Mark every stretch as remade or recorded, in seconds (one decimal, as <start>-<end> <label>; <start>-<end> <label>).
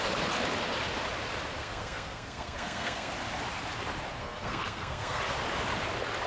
0.0-1.6 recorded; 1.6-3.1 remade; 3.1-4.2 recorded; 4.2-5.2 remade; 5.2-6.3 recorded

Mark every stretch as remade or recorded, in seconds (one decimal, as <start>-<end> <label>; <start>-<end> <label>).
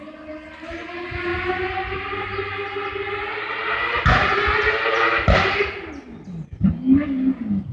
0.0-7.7 recorded